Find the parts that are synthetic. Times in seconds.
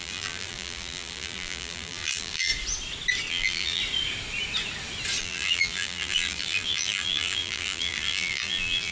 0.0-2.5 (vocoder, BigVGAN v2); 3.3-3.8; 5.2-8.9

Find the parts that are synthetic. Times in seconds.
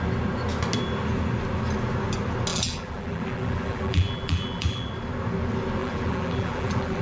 2.5-4.9 (vocoder, BigVGAN v2); 5.8-7.0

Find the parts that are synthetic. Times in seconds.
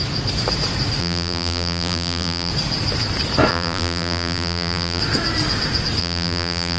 1.0-2.5 (vocoder, BigVGAN v2); 3.5-5.0; 6.0-6.8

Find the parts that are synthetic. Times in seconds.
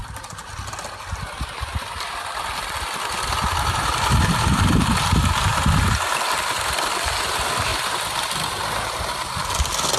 0.0-0.6 (vocoder, BigVGAN v2); 5.5-7.2; 7.7-8.8